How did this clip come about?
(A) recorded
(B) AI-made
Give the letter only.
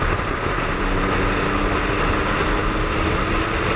A